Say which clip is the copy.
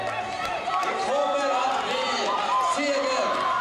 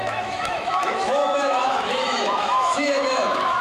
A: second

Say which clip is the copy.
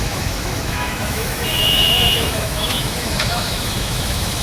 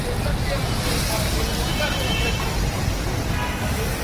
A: first